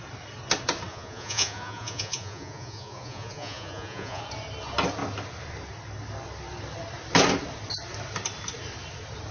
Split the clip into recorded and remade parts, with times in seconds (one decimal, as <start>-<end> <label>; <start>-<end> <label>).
0.0-0.9 recorded; 0.9-4.2 remade; 4.2-9.3 recorded